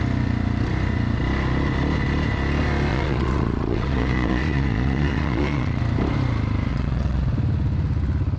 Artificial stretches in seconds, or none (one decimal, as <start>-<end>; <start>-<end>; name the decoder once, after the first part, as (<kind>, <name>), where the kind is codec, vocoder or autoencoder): 2.9-5.8 (vocoder, Vocos); 6.7-7.2